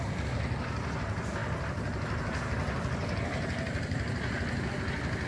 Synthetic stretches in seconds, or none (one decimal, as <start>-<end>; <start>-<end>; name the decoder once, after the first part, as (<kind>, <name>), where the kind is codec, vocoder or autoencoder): none